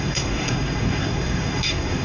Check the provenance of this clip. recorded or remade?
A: remade